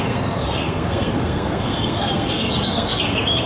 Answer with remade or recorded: remade